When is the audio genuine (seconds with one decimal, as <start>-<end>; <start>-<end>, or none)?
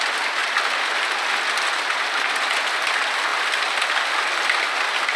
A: 0.0-5.2